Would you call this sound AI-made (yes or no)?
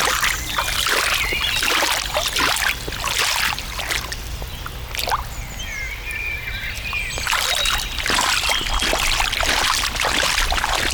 no